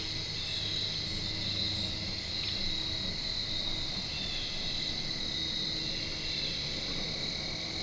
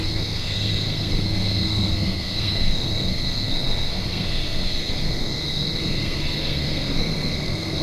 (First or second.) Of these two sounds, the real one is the first